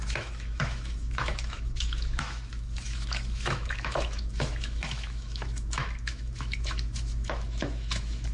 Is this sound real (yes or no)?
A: no